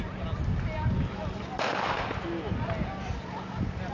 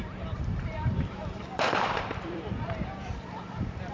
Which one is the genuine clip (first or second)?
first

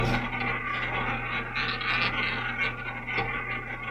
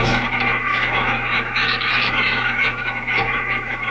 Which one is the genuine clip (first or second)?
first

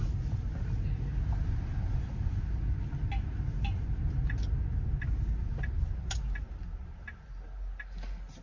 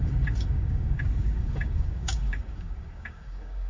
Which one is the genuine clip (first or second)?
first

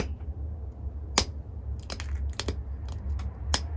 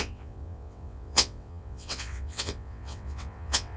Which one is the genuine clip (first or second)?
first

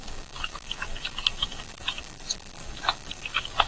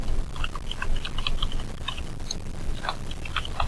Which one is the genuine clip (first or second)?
second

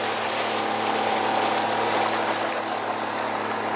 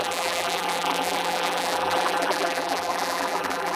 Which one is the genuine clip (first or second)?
first